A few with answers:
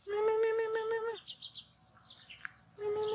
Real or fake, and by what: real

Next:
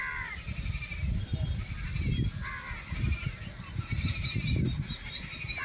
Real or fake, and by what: real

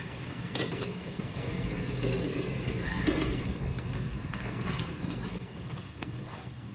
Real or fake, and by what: fake, codec, SNAC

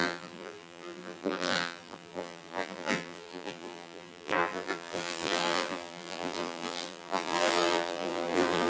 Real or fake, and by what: fake, vocoder, BigVGAN v2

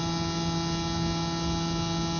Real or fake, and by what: real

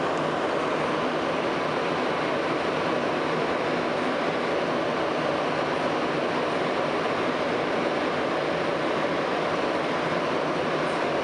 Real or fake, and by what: real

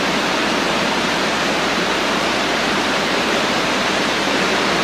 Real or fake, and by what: fake, vocoder, BigVGAN v2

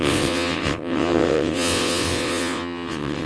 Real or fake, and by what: fake, vocoder, WaveNeXt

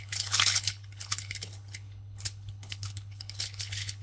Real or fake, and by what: fake, codec, HILCodec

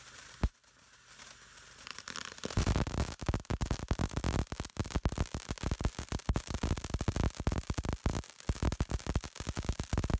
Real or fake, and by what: real